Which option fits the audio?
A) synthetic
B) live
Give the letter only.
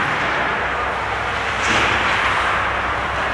B